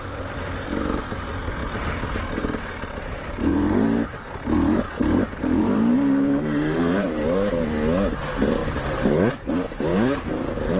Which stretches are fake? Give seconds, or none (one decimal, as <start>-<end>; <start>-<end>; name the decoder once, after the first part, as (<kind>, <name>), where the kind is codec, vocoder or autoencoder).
3.5-7.6 (vocoder, BigVGAN v2); 8.6-9.3; 9.9-10.8